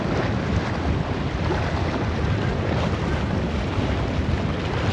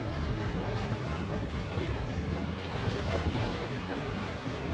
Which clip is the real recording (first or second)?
first